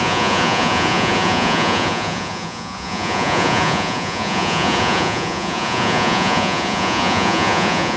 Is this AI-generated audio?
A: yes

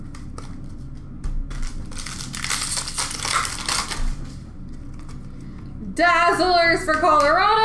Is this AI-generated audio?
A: no